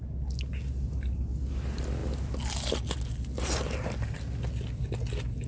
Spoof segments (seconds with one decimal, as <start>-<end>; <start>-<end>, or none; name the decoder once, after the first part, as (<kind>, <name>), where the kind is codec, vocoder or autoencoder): none